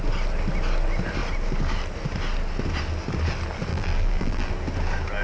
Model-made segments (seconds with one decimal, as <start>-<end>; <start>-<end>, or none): 3.7-4.5